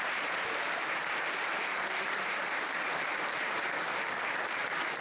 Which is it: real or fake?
fake